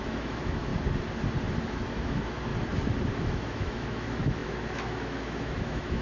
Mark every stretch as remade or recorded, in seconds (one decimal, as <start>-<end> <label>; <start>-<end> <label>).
0.0-0.7 remade; 0.7-1.6 recorded; 1.6-2.5 remade; 2.5-3.1 recorded; 3.1-6.0 remade